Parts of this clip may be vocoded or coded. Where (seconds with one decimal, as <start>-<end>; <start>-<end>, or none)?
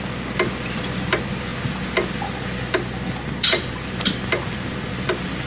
none